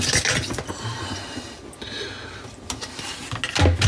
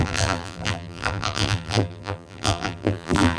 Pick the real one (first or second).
first